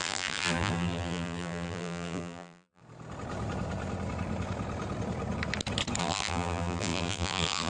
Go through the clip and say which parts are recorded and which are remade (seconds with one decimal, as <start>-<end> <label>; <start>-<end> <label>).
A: 0.0-2.8 remade; 2.8-6.0 recorded; 6.0-7.7 remade

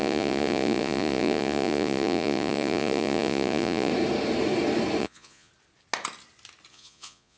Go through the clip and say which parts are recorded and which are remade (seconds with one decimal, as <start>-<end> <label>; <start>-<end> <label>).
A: 0.0-3.9 remade; 3.9-5.0 recorded; 5.0-5.5 remade; 5.5-6.7 recorded; 6.7-7.4 remade

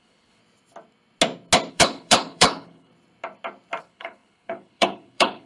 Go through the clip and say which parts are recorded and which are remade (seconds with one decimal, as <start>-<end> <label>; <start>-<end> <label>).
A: 0.0-0.4 remade; 0.4-1.7 recorded; 1.7-2.9 remade; 2.9-3.8 recorded; 3.8-5.5 remade

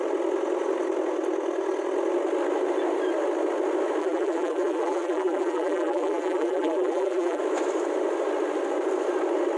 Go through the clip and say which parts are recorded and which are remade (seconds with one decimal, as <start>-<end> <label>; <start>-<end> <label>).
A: 0.0-4.0 recorded; 4.0-7.4 remade; 7.4-9.6 recorded

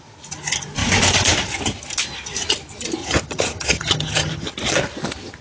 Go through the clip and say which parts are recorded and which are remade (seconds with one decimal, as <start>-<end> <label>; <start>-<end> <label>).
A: 0.0-3.0 recorded; 3.0-4.5 remade; 4.5-5.4 recorded

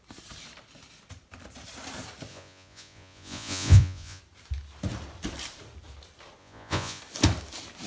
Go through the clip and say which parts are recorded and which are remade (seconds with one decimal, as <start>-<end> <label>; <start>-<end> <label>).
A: 0.0-2.3 recorded; 2.3-4.2 remade; 4.2-6.4 recorded; 6.4-7.0 remade; 7.0-7.9 recorded